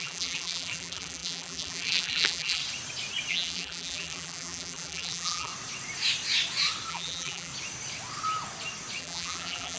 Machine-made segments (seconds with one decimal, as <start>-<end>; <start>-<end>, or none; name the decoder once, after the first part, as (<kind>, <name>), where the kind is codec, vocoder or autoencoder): 0.0-2.6 (vocoder, BigVGAN v2); 3.3-5.5; 6.9-7.5; 9.0-9.8